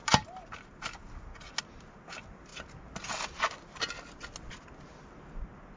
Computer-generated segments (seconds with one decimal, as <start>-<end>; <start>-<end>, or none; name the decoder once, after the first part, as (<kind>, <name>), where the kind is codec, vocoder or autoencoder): none